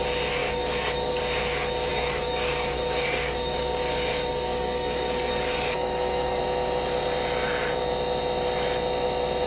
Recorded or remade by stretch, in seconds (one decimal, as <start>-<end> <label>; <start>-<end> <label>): 0.0-0.4 recorded; 0.4-1.2 remade; 1.2-1.9 recorded; 1.9-6.4 remade; 6.4-9.5 recorded